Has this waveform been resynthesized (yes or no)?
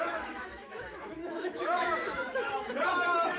yes